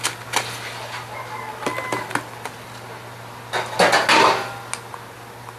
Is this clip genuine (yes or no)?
yes